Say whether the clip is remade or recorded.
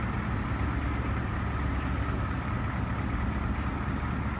recorded